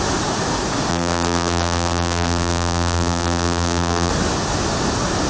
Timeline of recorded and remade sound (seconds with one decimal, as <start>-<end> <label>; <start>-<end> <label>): 0.0-0.9 recorded; 0.9-4.1 remade; 4.1-5.3 recorded